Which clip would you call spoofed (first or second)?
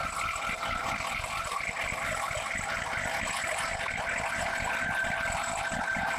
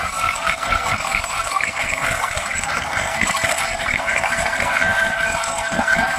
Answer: second